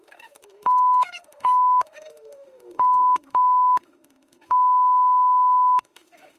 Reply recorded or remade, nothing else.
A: remade